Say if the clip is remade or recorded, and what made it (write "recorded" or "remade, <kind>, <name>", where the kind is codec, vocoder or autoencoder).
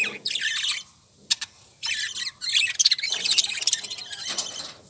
recorded